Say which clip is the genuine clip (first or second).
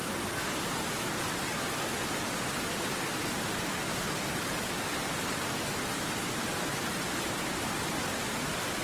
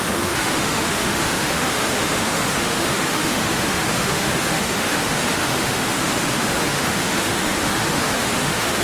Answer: first